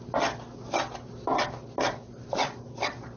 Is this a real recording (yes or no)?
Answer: yes